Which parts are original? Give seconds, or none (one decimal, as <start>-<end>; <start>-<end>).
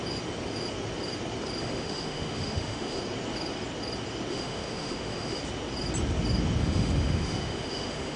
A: 0.0-1.6; 3.0-4.3; 5.4-6.6